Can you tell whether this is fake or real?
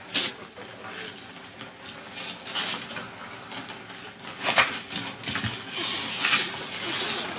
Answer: real